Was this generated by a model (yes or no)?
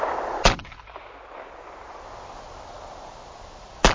no